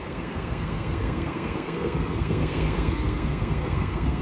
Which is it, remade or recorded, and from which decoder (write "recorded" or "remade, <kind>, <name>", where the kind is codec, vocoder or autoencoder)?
remade, codec, SNAC